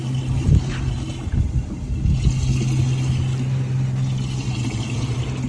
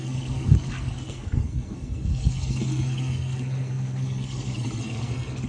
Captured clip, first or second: first